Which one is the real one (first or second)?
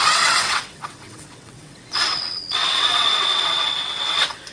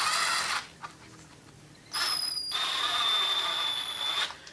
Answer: second